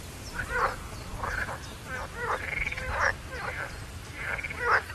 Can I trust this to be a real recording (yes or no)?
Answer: yes